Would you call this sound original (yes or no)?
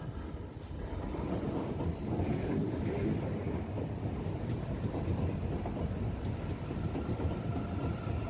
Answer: yes